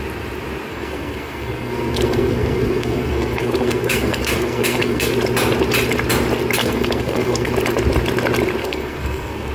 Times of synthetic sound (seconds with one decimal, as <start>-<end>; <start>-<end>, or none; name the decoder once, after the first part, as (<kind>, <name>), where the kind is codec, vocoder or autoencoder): 0.7-5.1 (codec, SNAC); 6.6-7.5; 8.6-9.5